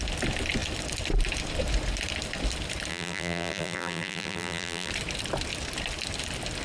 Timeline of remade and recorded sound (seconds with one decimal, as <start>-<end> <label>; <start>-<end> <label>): 0.0-2.9 recorded; 2.9-4.9 remade; 4.9-6.6 recorded